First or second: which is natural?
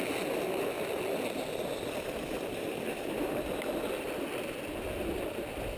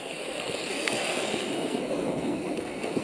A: first